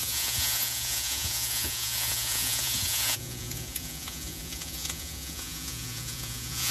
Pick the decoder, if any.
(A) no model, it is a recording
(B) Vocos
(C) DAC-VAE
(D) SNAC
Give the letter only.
B